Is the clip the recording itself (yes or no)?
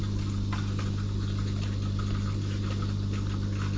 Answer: yes